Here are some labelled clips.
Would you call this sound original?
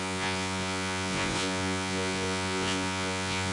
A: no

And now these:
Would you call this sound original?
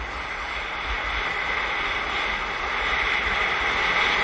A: yes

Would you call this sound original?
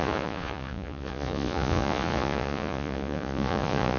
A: no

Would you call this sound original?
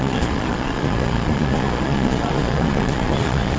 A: no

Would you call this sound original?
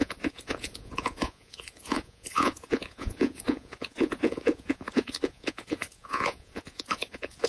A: no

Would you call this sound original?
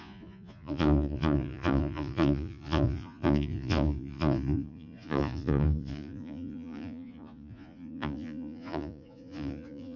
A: no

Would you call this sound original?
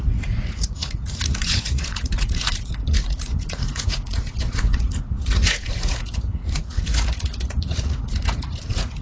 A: no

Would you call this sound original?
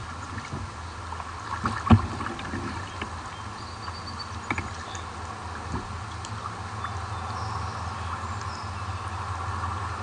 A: yes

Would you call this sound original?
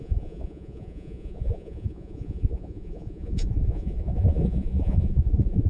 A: no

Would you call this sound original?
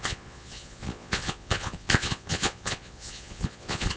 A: no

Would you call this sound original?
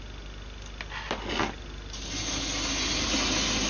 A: yes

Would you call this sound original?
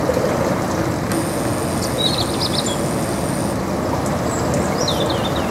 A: yes